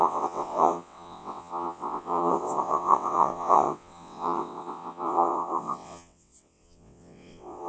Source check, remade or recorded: remade